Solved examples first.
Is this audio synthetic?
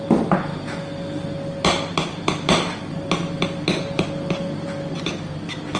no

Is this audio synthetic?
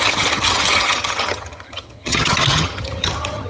yes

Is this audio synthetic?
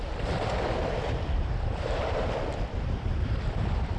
yes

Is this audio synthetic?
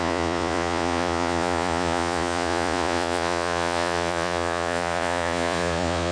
yes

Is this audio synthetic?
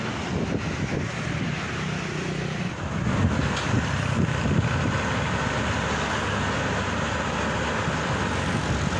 no